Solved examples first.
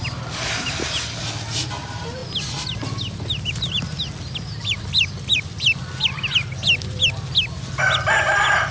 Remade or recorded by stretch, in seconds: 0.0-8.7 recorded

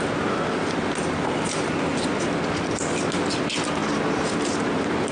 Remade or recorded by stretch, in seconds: 0.0-5.1 recorded

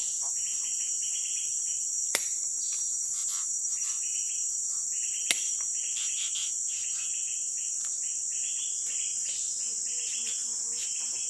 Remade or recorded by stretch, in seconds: 0.0-2.0 recorded; 2.0-2.6 remade; 2.6-6.4 recorded; 6.4-7.8 remade; 7.8-11.3 recorded

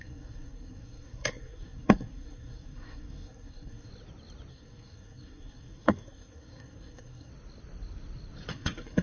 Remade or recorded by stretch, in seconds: 0.0-3.9 remade; 3.9-4.5 recorded; 4.5-7.3 remade; 7.3-8.5 recorded; 8.5-9.0 remade

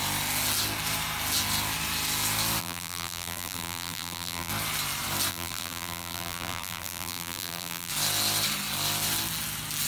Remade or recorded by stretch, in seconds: 0.0-2.6 recorded; 2.6-4.5 remade; 4.5-5.3 recorded; 5.3-7.9 remade; 7.9-9.9 recorded